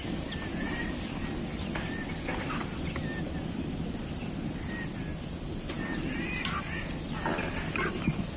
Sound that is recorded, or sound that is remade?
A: recorded